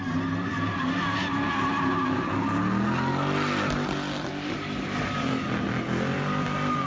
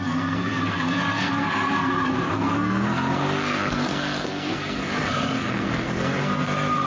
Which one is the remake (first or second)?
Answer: second